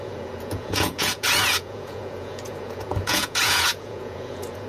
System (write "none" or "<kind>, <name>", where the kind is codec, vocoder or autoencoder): vocoder, Vocos